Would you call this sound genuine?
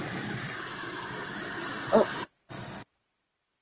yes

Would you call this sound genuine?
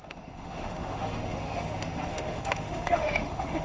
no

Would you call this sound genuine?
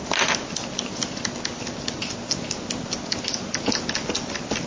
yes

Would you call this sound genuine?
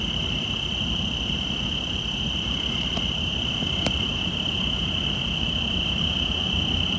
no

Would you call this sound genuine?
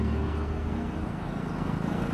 no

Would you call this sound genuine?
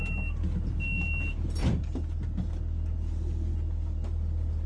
yes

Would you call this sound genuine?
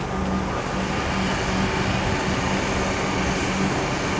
yes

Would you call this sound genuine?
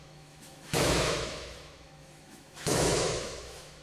no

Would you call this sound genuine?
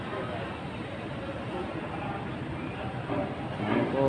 yes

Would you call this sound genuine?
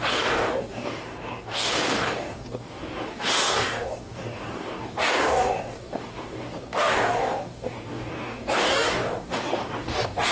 no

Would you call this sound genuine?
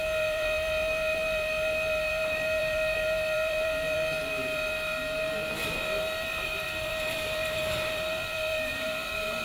no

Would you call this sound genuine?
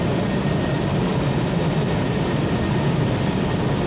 yes